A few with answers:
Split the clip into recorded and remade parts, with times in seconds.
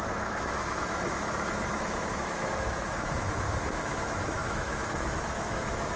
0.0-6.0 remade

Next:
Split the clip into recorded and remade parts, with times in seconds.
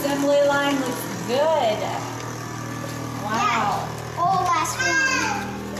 0.0-5.8 recorded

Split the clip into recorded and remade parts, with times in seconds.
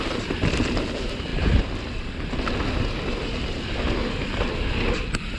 0.0-5.4 recorded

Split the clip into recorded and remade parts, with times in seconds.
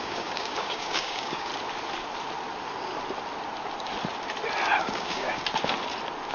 0.0-1.5 remade; 1.5-4.8 recorded; 4.8-5.4 remade; 5.4-6.3 recorded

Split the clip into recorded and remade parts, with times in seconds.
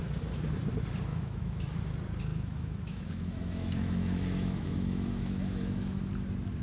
0.0-1.1 recorded; 1.1-1.8 remade; 1.8-2.3 recorded; 2.3-6.0 remade; 6.0-6.6 recorded